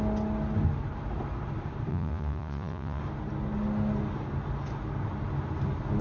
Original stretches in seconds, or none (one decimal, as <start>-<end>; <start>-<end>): 0.0-1.9; 3.0-6.0

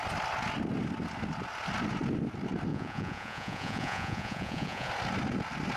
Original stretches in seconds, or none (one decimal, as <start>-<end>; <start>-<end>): 0.0-2.7; 4.9-5.8

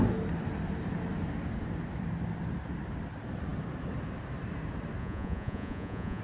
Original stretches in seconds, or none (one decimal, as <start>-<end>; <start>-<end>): 0.0-5.0

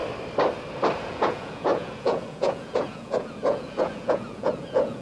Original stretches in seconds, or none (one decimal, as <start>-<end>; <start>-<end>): 0.0-1.1

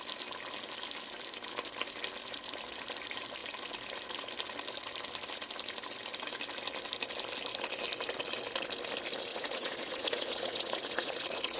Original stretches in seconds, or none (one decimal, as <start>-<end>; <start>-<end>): 0.0-9.3

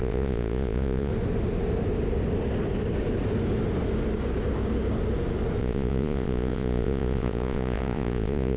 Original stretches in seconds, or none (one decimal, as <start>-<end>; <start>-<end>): 1.1-5.6

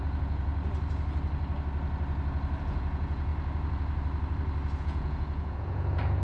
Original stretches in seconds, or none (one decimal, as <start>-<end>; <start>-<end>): 0.5-2.6; 3.3-4.8